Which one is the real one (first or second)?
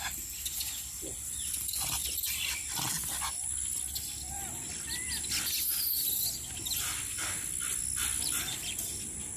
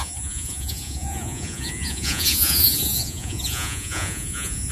first